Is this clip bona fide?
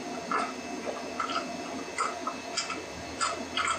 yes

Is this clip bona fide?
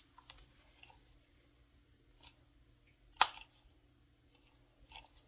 yes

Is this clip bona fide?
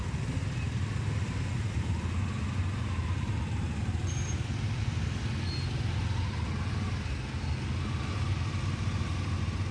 yes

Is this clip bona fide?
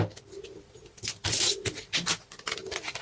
yes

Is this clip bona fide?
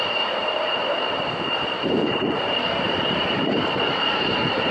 no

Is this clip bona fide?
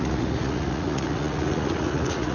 no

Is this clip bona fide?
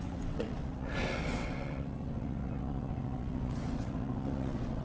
no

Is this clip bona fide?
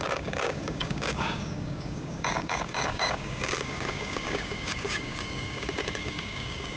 no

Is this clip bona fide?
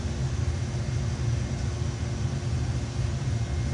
yes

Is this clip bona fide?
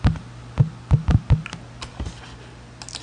yes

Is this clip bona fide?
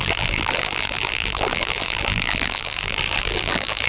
no